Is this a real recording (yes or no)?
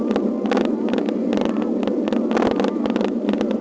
yes